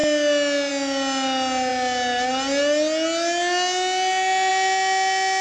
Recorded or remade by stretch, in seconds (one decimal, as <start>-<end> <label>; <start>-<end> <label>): 0.0-5.4 recorded